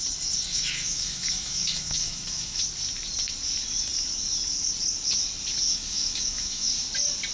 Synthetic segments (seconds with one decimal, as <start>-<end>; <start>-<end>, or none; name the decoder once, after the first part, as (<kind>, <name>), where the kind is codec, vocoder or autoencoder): 0.5-2.6 (autoencoder, DAC-VAE); 5.7-6.7